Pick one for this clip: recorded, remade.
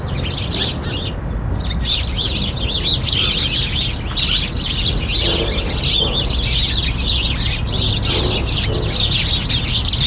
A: recorded